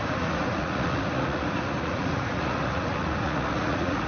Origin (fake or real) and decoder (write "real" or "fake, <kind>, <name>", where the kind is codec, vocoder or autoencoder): fake, vocoder, Vocos